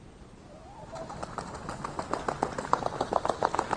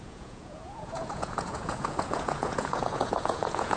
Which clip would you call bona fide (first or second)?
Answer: first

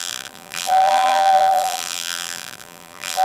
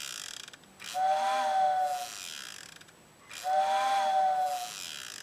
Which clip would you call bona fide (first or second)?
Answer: second